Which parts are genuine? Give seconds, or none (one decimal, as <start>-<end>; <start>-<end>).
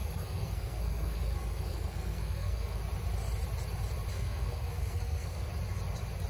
2.8-4.1; 5.5-6.3